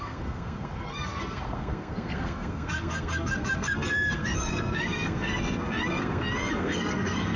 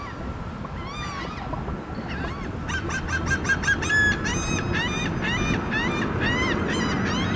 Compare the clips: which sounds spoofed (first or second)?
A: first